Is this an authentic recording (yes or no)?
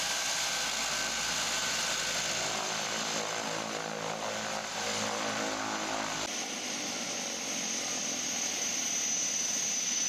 yes